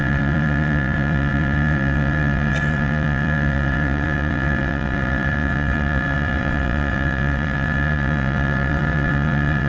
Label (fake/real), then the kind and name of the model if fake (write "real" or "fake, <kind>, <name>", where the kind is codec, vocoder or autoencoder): fake, vocoder, WaveNeXt